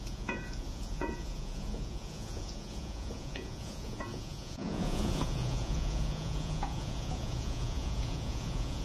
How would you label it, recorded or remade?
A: remade